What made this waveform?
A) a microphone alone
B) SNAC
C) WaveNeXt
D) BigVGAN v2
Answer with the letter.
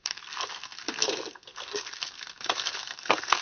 B